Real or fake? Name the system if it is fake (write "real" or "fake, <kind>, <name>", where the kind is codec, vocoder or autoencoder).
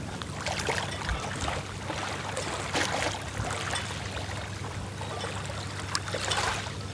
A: real